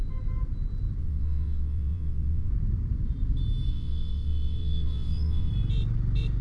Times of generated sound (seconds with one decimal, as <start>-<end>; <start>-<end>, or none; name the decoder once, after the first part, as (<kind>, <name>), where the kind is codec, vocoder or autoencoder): 1.0-2.5 (vocoder, WaveNeXt); 3.7-5.5